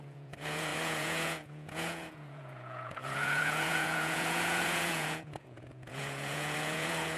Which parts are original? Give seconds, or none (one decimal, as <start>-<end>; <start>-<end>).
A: none